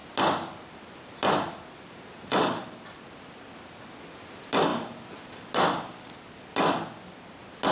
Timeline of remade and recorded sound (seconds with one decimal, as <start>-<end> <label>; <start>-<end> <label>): 0.0-7.7 recorded